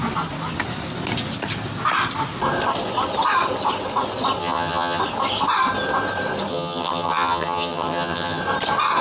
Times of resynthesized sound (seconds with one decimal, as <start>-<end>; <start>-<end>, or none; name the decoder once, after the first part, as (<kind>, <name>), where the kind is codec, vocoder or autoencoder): 4.4-5.0 (vocoder, HiFi-GAN); 6.5-8.4